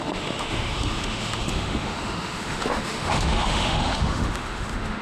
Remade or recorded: remade